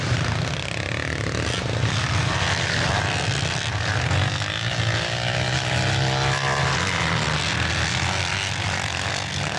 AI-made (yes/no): no